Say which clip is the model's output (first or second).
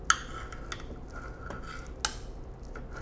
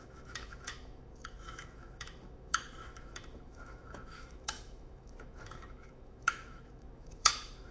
second